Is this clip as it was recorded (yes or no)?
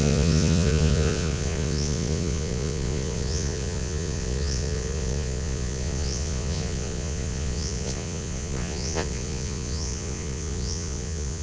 no